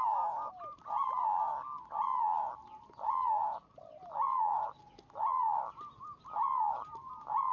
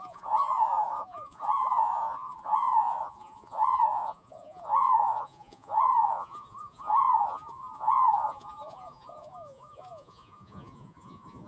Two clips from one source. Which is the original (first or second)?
first